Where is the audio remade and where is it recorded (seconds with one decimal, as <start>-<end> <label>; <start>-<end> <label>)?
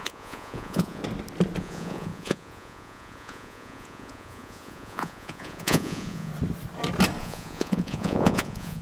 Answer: 0.0-1.0 remade; 1.0-1.6 recorded; 1.6-6.3 remade; 6.3-7.2 recorded; 7.2-8.8 remade